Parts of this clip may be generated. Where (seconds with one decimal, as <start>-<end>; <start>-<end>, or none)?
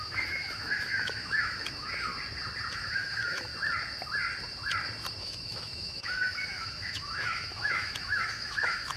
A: 0.0-2.1; 2.7-3.5; 5.2-9.0